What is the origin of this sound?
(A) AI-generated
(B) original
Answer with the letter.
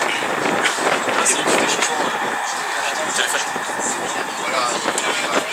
B